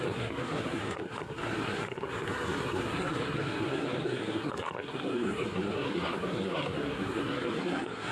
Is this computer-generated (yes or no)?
yes